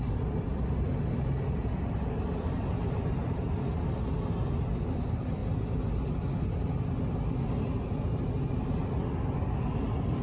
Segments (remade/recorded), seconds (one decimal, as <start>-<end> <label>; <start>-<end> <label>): 0.0-10.2 recorded